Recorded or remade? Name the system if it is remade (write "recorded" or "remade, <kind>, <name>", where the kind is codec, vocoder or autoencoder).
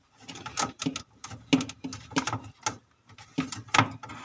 recorded